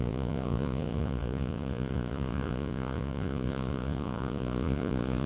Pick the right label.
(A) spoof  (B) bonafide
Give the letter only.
A